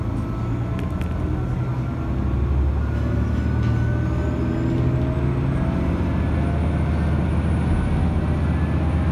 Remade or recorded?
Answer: recorded